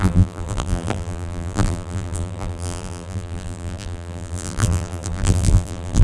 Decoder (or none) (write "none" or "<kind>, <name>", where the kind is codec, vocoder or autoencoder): vocoder, BigVGAN v2